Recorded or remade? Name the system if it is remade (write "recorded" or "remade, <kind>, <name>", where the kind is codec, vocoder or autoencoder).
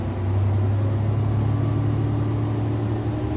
recorded